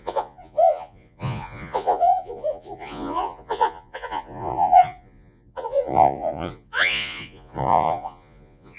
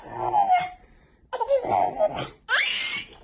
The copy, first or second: first